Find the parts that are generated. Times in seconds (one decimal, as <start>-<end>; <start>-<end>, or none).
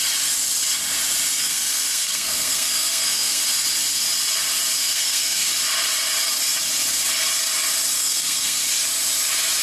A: 1.4-3.4; 4.8-5.5; 8.0-8.6